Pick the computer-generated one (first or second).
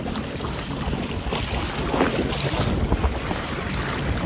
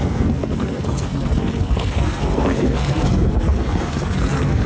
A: second